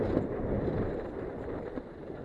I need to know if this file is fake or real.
real